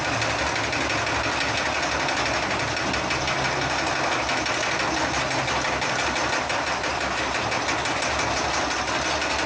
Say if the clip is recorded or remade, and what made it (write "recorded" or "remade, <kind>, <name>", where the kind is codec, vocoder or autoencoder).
recorded